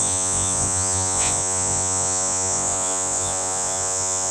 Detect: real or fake fake